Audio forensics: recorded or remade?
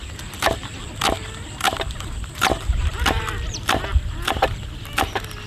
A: recorded